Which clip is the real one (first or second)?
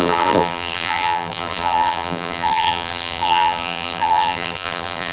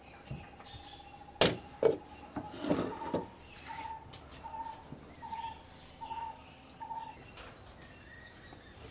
second